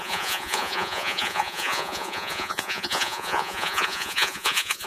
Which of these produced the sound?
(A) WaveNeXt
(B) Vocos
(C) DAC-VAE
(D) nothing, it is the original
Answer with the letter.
B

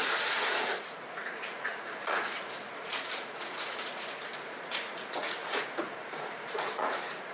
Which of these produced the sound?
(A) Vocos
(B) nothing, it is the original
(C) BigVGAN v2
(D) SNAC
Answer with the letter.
A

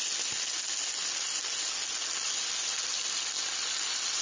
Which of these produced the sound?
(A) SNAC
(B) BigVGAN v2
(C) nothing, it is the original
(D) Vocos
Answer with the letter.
C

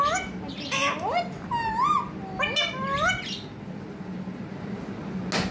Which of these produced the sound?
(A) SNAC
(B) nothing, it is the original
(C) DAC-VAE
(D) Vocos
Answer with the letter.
B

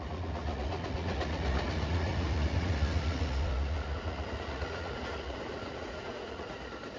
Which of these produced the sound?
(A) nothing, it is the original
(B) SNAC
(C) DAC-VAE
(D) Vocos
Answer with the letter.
D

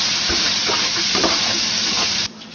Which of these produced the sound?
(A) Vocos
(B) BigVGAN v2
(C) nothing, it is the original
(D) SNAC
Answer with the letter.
C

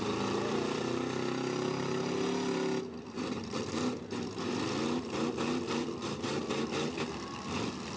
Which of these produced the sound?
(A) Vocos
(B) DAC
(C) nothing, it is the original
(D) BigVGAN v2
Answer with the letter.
C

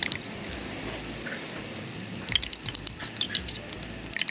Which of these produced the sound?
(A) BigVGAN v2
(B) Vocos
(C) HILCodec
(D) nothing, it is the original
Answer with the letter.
D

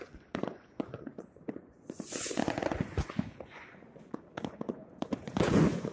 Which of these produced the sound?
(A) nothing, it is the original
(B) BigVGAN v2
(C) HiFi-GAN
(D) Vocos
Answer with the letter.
D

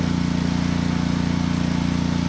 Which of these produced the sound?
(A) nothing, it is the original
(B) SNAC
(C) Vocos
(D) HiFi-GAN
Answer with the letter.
A